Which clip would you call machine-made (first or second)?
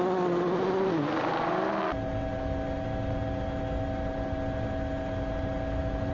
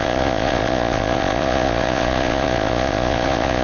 second